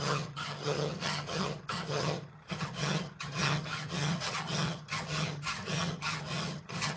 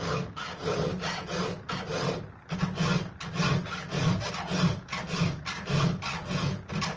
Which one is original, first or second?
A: second